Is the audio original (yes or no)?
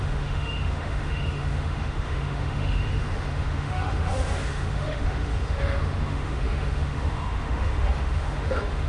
no